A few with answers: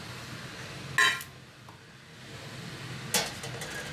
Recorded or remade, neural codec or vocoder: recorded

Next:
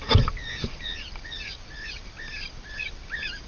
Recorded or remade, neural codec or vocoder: recorded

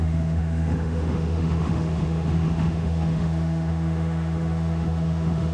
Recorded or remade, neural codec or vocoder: remade, autoencoder, DAC-VAE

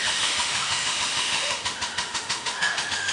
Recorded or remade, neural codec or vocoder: remade, autoencoder, DAC-VAE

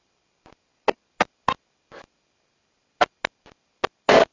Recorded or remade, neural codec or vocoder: recorded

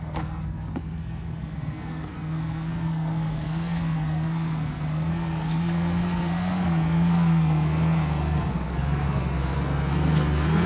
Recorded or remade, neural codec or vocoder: remade, codec, SNAC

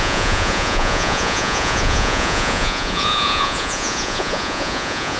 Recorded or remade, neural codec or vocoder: remade, vocoder, Vocos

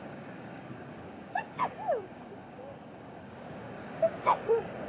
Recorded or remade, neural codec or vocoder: remade, codec, DAC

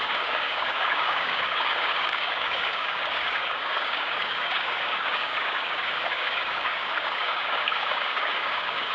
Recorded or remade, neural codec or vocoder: remade, codec, DAC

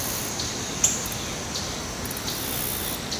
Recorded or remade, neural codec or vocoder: recorded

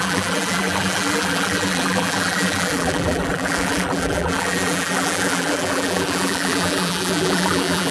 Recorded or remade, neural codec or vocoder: remade, vocoder, BigVGAN v2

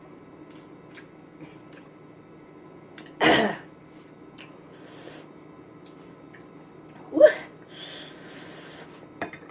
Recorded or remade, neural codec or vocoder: remade, vocoder, BigVGAN v2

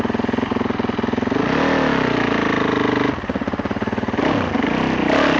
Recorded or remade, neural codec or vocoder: recorded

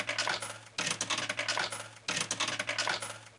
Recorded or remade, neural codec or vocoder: recorded